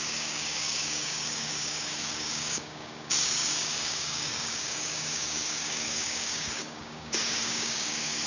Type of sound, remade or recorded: remade